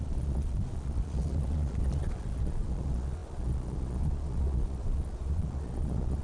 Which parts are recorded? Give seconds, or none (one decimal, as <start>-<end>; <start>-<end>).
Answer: none